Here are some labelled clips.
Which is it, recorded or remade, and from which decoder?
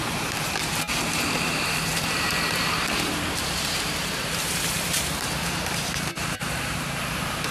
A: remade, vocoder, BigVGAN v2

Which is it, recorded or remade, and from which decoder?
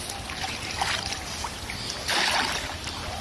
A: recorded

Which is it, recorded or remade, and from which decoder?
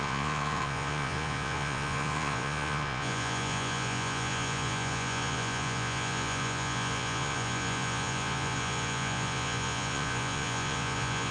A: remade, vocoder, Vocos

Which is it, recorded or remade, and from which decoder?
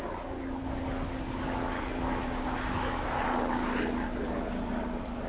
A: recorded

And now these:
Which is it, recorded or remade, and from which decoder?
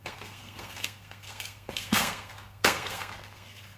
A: remade, codec, SNAC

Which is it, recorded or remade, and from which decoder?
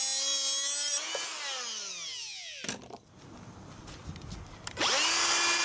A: recorded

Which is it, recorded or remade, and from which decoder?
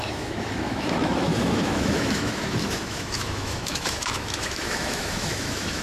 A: remade, autoencoder, DAC-VAE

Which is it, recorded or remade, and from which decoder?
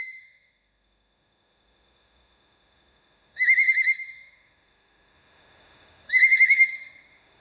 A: remade, autoencoder, DAC-VAE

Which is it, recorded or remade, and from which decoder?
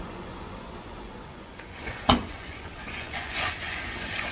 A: remade, vocoder, Vocos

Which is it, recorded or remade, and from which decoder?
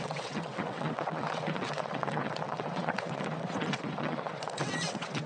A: remade, vocoder, WaveNeXt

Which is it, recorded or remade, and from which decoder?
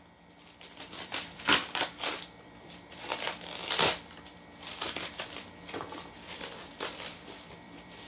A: remade, vocoder, BigVGAN v2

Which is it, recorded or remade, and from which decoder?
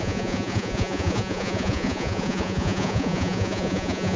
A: remade, vocoder, Vocos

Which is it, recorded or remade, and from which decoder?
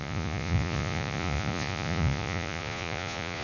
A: remade, vocoder, Vocos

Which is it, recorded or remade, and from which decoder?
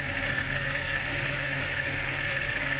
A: remade, codec, SNAC